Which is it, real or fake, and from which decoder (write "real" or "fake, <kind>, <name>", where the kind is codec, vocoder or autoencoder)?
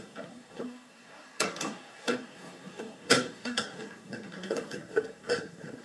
fake, codec, SNAC